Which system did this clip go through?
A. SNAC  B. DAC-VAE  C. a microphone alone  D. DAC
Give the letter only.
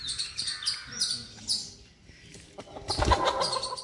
C